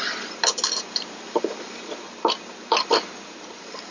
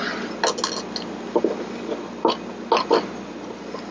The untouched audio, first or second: second